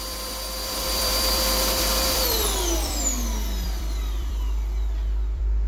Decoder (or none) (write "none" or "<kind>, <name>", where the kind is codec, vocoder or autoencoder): vocoder, BigVGAN v2